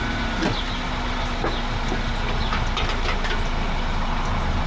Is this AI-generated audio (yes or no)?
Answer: no